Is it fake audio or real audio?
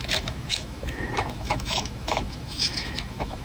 fake